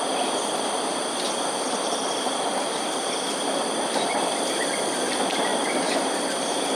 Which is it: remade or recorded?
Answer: remade